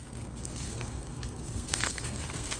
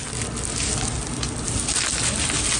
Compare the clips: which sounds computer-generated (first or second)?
first